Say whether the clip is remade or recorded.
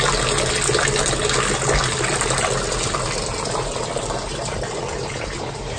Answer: recorded